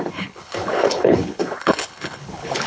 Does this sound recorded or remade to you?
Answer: remade